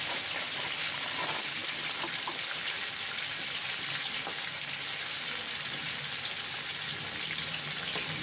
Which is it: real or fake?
real